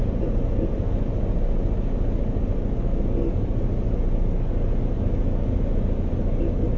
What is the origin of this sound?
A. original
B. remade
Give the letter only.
A